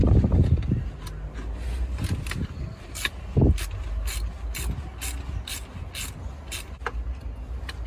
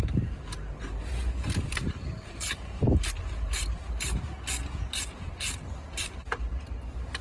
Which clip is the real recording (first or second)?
first